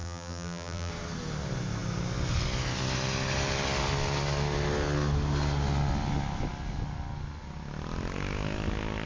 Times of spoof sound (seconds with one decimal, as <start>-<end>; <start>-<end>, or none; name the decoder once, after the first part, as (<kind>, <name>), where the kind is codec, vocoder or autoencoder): 0.0-0.9 (vocoder, BigVGAN v2)